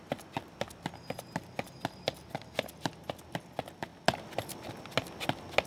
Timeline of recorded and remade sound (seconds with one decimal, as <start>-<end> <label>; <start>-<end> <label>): 0.0-5.7 recorded